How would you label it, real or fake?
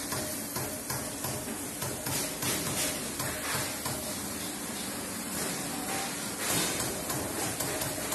real